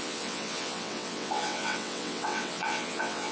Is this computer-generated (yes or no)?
yes